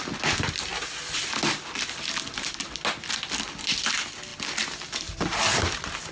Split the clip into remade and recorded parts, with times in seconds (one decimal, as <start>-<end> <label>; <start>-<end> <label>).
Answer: 0.0-6.1 recorded